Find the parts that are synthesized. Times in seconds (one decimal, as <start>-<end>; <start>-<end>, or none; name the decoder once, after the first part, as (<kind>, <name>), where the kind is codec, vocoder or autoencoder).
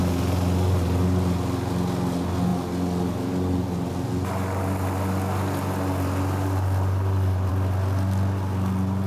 none